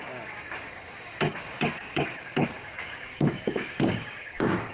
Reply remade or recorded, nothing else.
remade